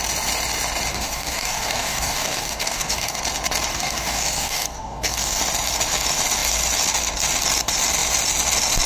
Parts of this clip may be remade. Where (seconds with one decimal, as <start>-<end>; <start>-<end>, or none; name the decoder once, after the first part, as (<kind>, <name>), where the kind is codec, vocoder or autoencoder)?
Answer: 0.9-3.2 (codec, DAC); 3.7-5.4